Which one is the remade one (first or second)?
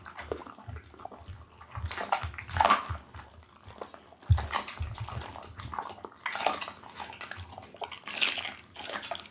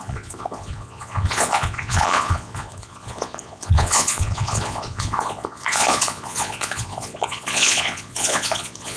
second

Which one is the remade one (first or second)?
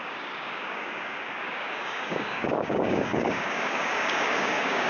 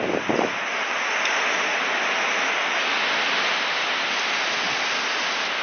first